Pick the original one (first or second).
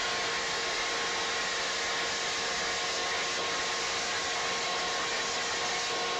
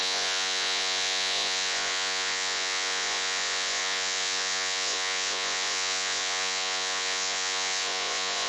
first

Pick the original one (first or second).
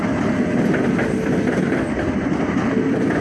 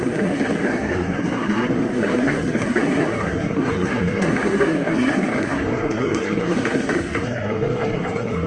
first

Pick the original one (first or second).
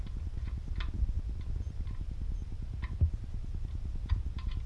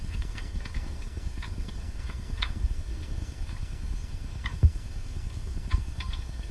first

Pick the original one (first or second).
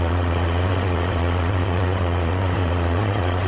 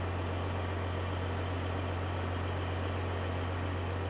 second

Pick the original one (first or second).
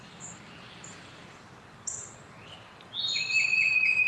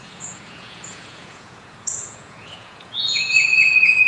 first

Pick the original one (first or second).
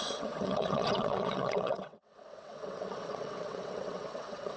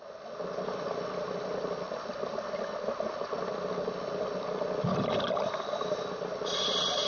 second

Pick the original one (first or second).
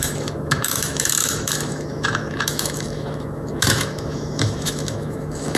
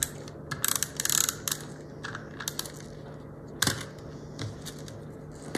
second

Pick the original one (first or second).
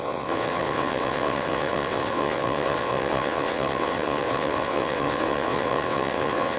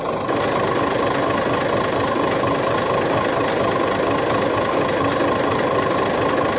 second